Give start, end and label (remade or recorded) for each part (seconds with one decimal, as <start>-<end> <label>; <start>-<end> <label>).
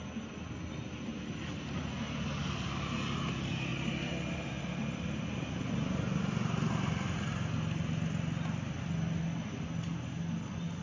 0.0-10.8 recorded